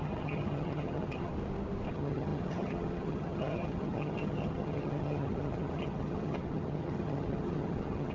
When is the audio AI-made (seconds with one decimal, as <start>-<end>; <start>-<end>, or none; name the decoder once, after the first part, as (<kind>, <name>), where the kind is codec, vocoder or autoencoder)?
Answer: 0.0-1.3 (vocoder, HiFi-GAN); 1.9-8.1